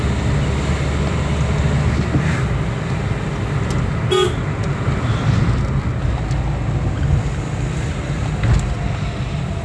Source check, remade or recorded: recorded